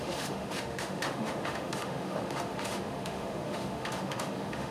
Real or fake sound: fake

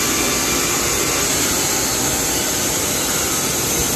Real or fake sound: real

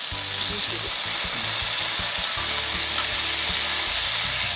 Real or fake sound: real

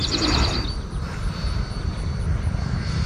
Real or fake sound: real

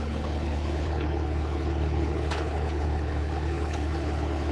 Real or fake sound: fake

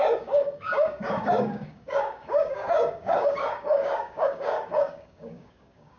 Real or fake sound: fake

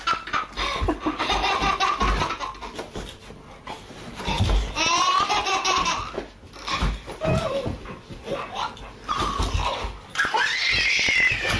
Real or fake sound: real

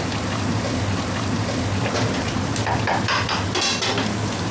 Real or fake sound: real